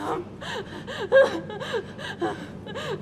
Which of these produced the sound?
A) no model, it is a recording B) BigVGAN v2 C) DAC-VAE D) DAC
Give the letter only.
A